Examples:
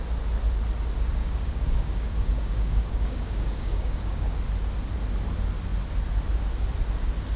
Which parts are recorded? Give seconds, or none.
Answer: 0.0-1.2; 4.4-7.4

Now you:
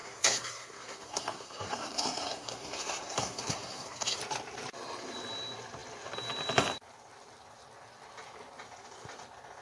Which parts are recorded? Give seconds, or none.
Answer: 4.2-9.6

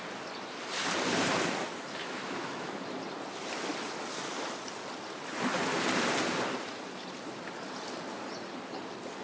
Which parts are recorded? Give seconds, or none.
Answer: 0.0-2.0; 2.7-9.2

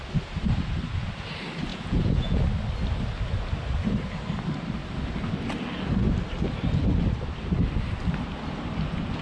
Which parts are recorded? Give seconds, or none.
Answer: 0.0-1.7; 2.4-9.2

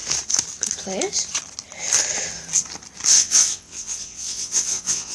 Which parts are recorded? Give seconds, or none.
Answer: 0.0-3.1